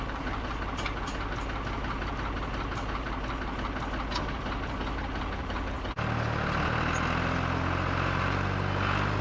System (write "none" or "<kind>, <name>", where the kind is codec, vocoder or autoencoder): none